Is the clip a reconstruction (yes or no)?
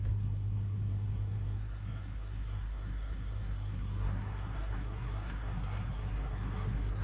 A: yes